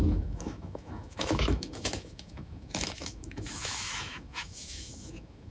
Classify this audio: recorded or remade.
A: remade